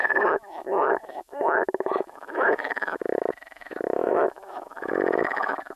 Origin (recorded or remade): remade